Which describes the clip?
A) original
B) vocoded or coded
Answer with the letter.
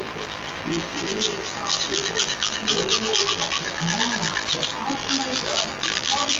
B